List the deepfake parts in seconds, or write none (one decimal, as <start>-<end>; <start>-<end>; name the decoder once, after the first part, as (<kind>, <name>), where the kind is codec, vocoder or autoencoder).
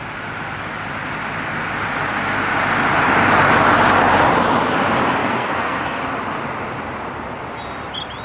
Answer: 5.2-6.0 (codec, SNAC)